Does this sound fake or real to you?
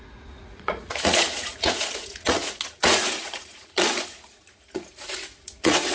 fake